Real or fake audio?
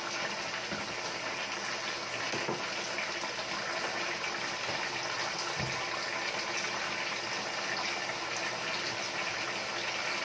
real